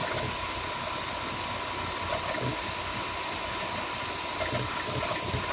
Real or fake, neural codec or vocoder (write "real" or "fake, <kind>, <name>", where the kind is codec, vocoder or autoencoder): real